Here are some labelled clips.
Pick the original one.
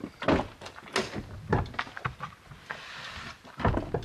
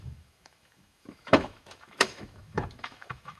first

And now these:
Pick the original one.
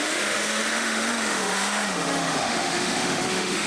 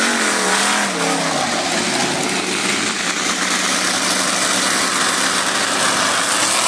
second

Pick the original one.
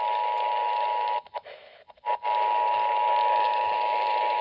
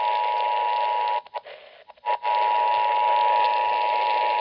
second